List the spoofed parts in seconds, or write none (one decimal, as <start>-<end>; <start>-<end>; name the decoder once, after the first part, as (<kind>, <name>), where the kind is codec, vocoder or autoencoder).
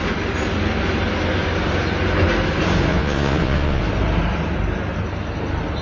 2.9-3.8 (vocoder, Vocos)